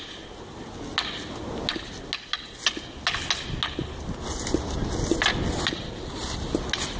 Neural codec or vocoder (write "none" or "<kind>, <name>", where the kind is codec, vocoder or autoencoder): none